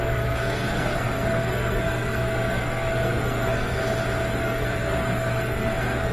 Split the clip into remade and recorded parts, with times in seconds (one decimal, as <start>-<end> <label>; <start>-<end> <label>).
0.0-3.8 remade; 3.8-4.4 recorded; 4.4-6.1 remade